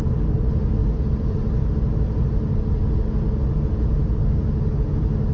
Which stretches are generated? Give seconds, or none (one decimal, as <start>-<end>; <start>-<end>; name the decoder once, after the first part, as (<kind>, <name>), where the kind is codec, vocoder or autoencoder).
none